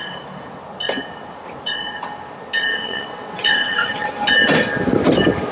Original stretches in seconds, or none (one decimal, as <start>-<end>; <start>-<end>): 0.0-2.7; 4.1-5.5